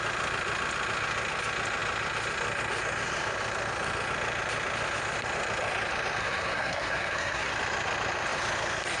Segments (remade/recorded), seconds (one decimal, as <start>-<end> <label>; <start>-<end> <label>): 0.0-6.2 recorded; 6.2-7.5 remade; 7.5-9.0 recorded